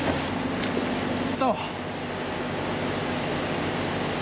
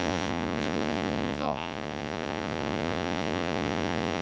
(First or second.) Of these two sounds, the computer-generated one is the second